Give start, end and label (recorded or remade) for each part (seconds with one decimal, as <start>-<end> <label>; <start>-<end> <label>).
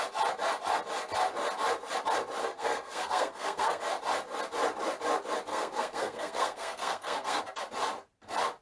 0.0-2.4 recorded; 2.4-3.8 remade; 3.8-5.5 recorded; 5.5-7.4 remade; 7.4-8.6 recorded